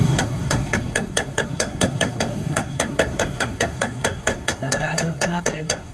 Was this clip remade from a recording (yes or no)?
yes